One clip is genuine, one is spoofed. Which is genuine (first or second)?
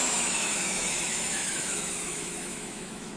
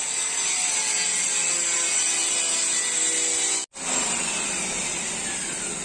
second